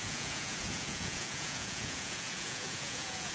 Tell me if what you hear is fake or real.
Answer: fake